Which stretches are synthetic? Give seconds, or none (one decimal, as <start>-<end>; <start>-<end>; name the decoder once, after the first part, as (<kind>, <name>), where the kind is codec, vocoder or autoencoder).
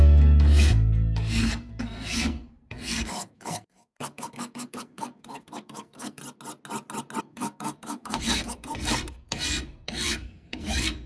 0.0-6.2 (codec, SNAC); 7.2-11.1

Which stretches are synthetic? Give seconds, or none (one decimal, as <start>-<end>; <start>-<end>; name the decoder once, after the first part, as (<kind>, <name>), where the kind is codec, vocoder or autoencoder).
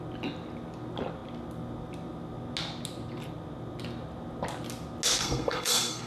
5.2-6.1 (codec, SNAC)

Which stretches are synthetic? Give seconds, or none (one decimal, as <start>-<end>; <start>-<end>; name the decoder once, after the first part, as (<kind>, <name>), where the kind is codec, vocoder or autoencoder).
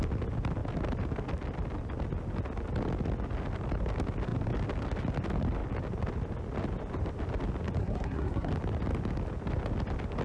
7.8-8.5 (codec, SNAC)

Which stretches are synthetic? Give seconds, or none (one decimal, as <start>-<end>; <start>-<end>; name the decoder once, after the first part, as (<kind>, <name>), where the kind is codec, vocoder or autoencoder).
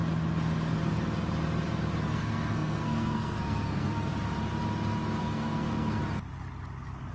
2.1-4.1 (codec, SNAC); 5.2-6.0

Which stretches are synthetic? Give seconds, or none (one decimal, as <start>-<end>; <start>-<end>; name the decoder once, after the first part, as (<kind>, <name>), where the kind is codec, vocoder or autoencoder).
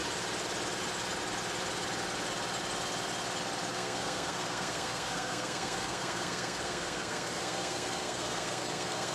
3.7-9.1 (codec, SNAC)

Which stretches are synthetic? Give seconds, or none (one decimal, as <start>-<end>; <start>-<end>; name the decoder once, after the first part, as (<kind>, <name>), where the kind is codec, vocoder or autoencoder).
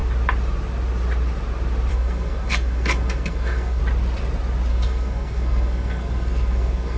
1.9-3.8 (codec, SNAC); 4.7-7.0